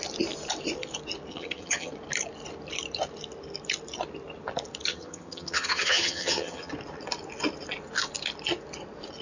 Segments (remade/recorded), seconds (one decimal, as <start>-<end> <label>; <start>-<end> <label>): 0.0-1.3 recorded; 1.3-1.9 remade; 1.9-4.9 recorded; 4.9-6.7 remade; 6.7-9.2 recorded